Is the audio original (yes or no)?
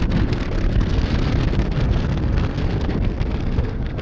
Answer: no